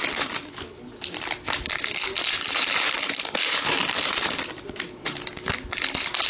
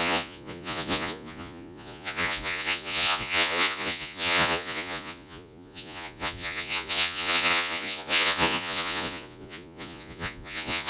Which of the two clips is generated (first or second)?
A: second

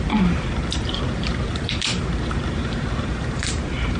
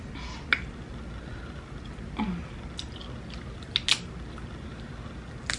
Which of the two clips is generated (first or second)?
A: first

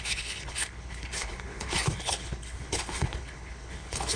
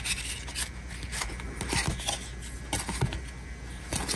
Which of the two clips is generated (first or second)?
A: first